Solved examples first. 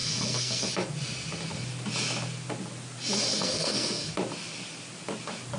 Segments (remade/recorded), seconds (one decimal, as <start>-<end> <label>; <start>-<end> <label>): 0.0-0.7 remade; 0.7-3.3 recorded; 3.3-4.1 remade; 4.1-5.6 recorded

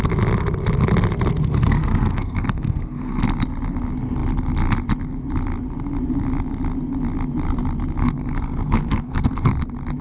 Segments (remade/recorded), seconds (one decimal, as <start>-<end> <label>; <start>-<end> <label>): 0.0-1.4 recorded; 1.4-3.2 remade; 3.2-8.0 recorded; 8.0-9.5 remade; 9.5-10.0 recorded

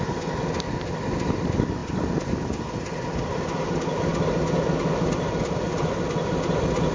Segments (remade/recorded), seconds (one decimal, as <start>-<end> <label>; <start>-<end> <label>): 0.0-6.9 recorded

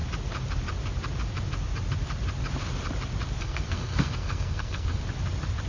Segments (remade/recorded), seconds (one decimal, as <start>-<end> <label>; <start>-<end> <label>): 0.0-3.4 recorded; 3.4-5.0 remade; 5.0-5.7 recorded

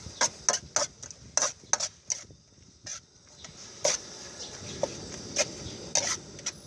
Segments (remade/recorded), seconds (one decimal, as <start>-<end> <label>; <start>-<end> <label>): 0.0-6.7 recorded

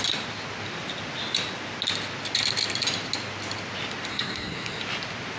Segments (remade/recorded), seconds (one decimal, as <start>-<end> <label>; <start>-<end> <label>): 0.0-4.1 recorded; 4.1-4.8 remade; 4.8-5.4 recorded

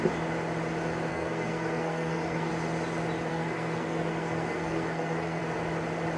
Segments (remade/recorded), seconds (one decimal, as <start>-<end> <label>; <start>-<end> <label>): 0.0-1.1 recorded; 1.1-2.5 remade; 2.5-3.3 recorded; 3.3-5.4 remade; 5.4-6.2 recorded